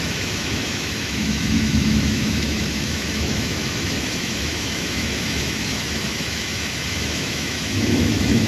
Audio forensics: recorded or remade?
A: remade